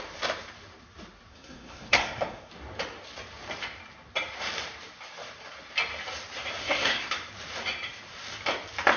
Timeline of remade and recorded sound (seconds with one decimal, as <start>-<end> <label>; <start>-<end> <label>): 0.0-1.3 recorded; 1.3-2.5 remade; 2.5-6.6 recorded; 6.6-7.1 remade; 7.1-9.0 recorded